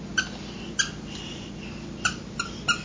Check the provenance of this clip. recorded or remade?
recorded